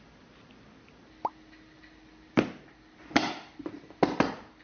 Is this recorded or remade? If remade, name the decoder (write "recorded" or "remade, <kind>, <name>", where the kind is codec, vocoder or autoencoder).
recorded